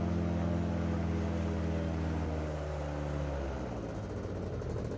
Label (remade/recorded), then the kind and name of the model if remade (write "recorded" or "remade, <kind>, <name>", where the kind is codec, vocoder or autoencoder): recorded